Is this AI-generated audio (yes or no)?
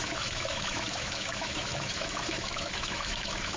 yes